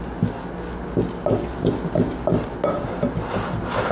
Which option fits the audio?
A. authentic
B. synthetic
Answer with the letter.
A